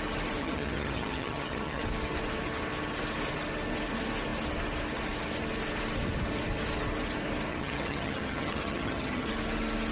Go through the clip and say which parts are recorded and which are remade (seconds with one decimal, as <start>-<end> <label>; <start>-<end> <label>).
0.0-0.4 recorded; 0.4-1.8 remade; 1.8-7.5 recorded; 7.5-9.3 remade; 9.3-9.9 recorded